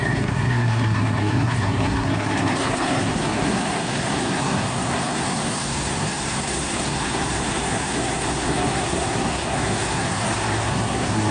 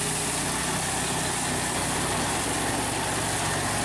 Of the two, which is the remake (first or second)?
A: first